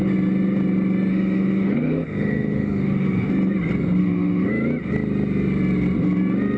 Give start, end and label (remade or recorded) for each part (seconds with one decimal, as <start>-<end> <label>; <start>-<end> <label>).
0.0-1.1 recorded; 1.1-3.3 remade; 3.3-4.0 recorded; 4.0-4.5 remade; 4.5-6.6 recorded